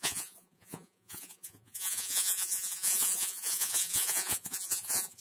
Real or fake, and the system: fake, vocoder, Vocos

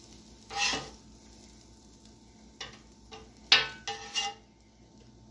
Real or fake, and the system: real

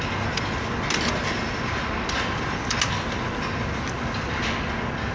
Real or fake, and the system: real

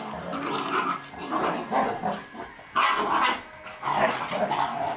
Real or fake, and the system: real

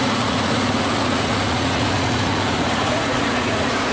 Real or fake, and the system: fake, vocoder, Vocos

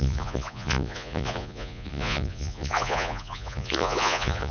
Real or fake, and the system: fake, vocoder, Vocos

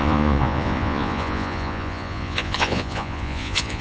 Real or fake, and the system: fake, vocoder, Vocos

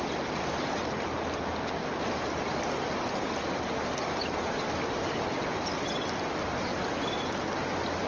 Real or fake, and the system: real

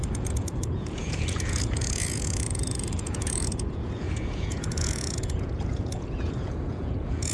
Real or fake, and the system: fake, vocoder, Vocos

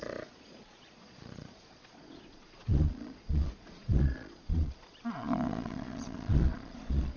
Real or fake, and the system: fake, vocoder, Vocos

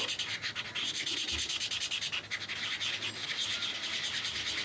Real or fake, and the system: real